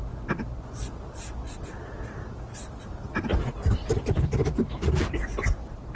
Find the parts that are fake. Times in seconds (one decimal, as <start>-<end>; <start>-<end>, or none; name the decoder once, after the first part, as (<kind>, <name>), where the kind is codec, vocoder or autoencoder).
3.8-6.0 (vocoder, BigVGAN v2)